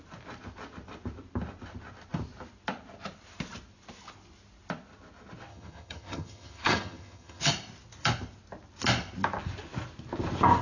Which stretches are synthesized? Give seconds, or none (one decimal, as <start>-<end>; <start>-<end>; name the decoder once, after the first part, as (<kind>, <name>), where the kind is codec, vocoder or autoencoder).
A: 5.5-7.5 (vocoder, HiFi-GAN)